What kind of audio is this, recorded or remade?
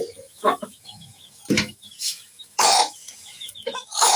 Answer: remade